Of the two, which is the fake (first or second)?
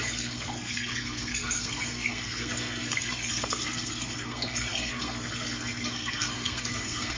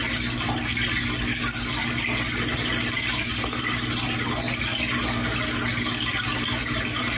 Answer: first